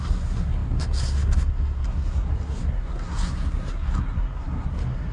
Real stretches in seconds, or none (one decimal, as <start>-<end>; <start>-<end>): none